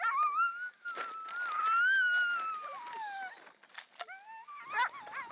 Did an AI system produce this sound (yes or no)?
no